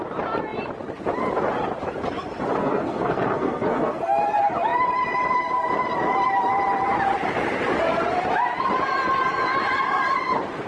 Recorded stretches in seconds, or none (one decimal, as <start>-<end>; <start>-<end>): 0.0-2.6; 4.0-10.7